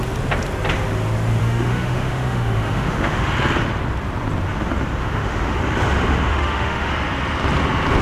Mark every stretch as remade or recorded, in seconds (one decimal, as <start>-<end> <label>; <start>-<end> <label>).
0.0-1.4 recorded; 1.4-3.3 remade; 3.3-5.0 recorded; 5.0-5.6 remade; 5.6-6.3 recorded; 6.3-6.9 remade; 6.9-8.0 recorded